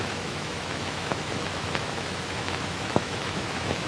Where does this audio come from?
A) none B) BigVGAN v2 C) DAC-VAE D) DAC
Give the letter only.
C